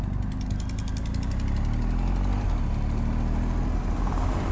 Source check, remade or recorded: recorded